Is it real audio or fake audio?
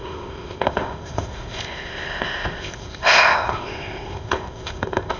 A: fake